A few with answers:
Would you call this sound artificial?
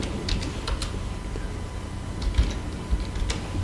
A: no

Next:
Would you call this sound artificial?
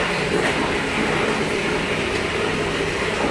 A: no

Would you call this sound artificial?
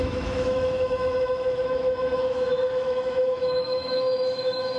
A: yes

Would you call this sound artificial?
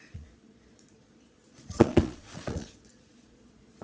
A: yes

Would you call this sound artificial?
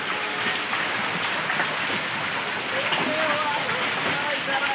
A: no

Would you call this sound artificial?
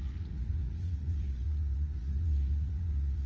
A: yes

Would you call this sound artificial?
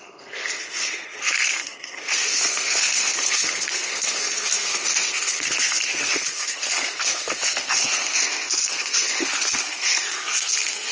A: yes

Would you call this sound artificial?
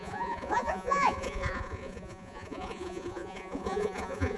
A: yes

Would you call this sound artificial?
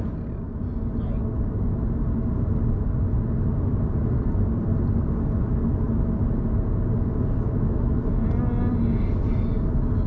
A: no